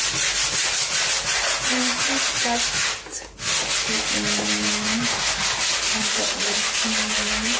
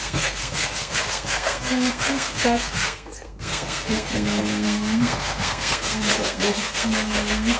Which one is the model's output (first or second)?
second